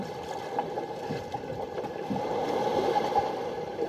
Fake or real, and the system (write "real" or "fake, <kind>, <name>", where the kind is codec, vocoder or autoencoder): real